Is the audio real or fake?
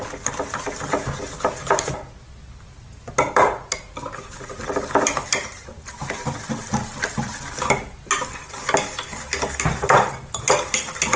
real